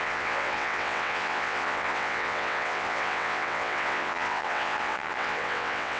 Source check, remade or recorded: remade